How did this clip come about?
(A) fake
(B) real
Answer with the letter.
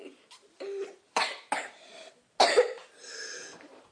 B